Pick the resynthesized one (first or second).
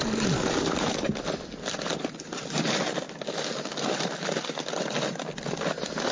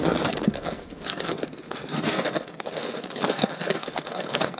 second